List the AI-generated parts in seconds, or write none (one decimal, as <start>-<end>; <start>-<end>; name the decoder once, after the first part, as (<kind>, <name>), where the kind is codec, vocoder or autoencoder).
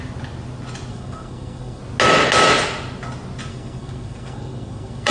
0.9-1.8 (codec, SNAC); 3.5-5.1